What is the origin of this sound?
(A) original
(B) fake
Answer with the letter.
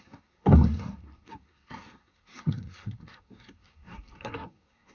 B